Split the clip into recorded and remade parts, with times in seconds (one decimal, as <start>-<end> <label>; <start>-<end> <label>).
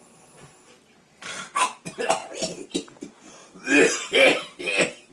0.0-5.1 recorded